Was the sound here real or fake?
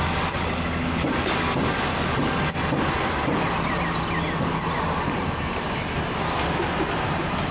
real